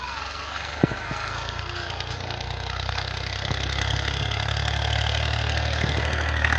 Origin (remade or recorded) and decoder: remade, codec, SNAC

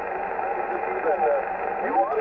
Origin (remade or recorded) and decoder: recorded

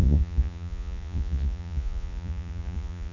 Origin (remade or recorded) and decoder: remade, vocoder, Vocos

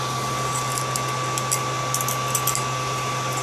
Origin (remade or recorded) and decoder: recorded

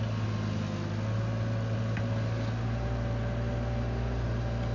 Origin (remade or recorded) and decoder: recorded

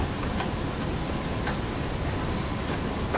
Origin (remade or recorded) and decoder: recorded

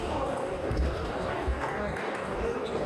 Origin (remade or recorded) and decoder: remade, codec, DAC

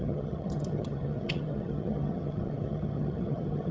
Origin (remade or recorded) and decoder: remade, vocoder, HiFi-GAN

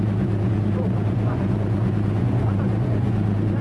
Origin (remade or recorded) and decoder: remade, vocoder, Vocos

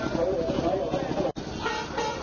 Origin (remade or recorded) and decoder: recorded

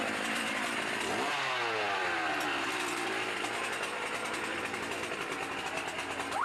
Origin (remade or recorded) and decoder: recorded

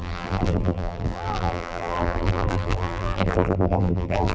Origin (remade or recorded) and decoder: remade, vocoder, BigVGAN v2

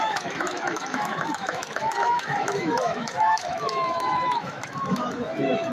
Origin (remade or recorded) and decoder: remade, autoencoder, DAC-VAE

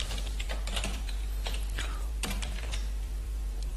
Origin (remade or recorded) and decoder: remade, vocoder, BigVGAN v2